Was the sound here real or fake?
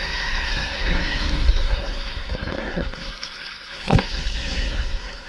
fake